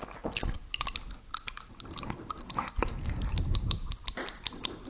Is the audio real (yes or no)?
yes